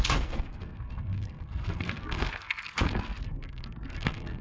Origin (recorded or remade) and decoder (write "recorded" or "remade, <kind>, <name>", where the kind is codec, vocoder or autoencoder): remade, codec, SNAC